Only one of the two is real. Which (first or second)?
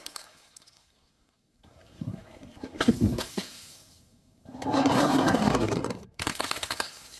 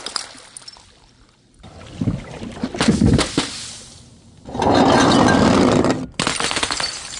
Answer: second